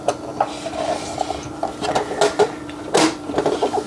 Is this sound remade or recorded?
recorded